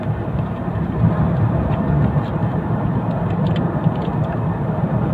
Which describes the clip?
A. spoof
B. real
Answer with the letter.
A